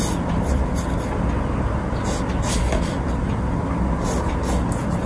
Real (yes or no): yes